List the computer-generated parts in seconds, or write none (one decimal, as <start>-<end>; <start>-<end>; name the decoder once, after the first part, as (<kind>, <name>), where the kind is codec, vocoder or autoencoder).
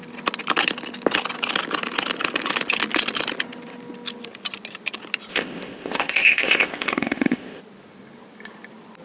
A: 5.3-7.6 (codec, ZipCodec)